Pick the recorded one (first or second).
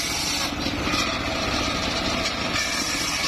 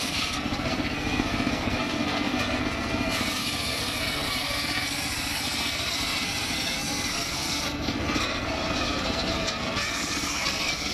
first